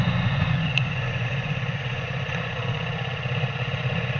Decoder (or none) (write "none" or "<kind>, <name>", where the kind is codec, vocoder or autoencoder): vocoder, Vocos